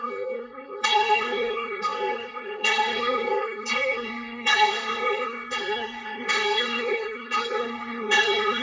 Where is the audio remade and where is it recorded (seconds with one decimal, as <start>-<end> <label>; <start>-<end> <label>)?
0.0-8.6 remade

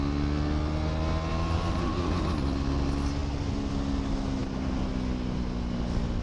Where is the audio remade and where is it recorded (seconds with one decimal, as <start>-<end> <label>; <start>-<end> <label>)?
0.0-1.3 recorded; 1.3-2.3 remade; 2.3-6.2 recorded

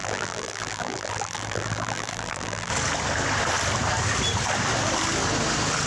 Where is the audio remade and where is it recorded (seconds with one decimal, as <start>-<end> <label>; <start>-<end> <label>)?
0.0-2.7 remade; 2.7-5.9 recorded

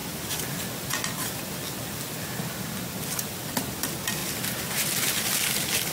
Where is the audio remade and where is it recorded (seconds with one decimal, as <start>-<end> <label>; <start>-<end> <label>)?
0.0-4.2 recorded; 4.2-5.3 remade; 5.3-5.9 recorded

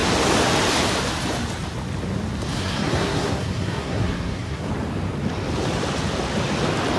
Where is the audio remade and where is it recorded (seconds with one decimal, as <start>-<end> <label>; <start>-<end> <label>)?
0.0-2.5 recorded; 2.5-4.7 remade; 4.7-7.0 recorded

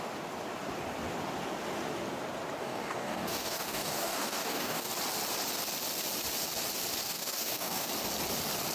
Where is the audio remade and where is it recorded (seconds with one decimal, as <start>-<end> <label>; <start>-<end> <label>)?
0.0-2.6 recorded; 2.6-4.9 remade; 4.9-7.0 recorded; 7.0-7.9 remade; 7.9-8.7 recorded

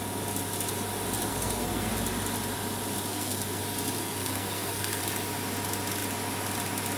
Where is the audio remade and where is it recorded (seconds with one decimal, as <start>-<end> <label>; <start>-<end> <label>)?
0.0-1.3 recorded; 1.3-1.9 remade; 1.9-3.1 recorded; 3.1-3.6 remade; 3.6-4.0 recorded; 4.0-5.0 remade; 5.0-7.0 recorded